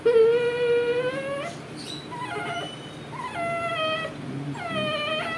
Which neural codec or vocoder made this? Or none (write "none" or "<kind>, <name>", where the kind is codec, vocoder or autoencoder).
none